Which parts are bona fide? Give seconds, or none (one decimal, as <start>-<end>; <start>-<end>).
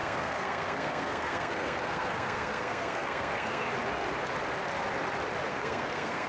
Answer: 3.7-5.5